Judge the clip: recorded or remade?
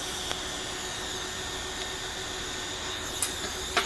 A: recorded